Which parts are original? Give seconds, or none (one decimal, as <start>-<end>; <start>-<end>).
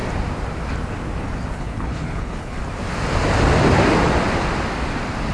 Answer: 0.0-1.5; 2.6-5.3